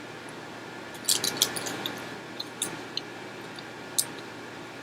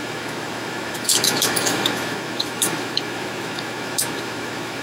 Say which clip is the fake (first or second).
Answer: second